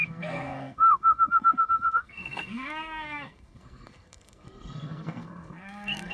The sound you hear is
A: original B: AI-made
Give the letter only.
B